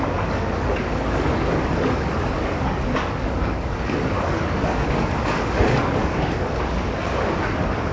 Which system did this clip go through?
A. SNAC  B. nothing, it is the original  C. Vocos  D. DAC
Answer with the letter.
D